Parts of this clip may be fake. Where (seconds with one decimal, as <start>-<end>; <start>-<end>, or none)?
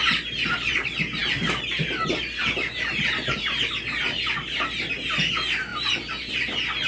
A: none